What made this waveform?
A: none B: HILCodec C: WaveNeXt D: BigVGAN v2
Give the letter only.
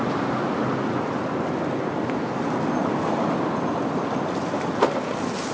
A